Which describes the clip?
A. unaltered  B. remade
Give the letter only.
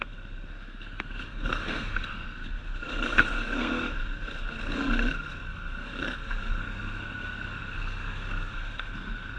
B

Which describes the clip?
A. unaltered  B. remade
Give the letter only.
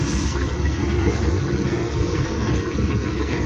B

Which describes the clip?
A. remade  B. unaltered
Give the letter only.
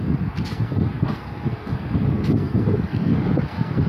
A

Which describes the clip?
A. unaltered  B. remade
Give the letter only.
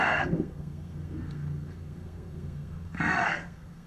B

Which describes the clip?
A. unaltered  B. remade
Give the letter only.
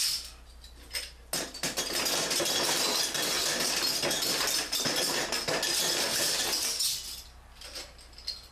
A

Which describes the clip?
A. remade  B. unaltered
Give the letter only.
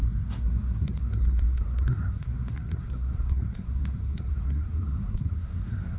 A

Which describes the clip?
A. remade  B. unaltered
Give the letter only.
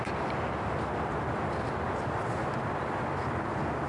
B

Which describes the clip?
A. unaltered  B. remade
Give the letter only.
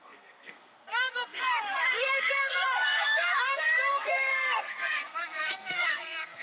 B